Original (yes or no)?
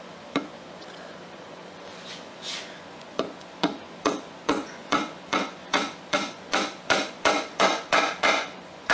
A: no